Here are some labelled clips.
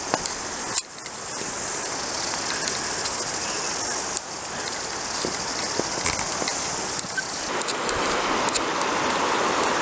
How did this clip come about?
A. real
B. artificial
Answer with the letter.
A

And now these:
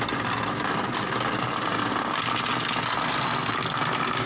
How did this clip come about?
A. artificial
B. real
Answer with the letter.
B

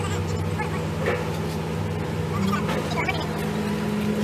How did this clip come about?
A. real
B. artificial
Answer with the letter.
A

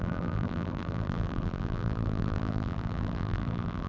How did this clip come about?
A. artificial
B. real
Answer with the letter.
A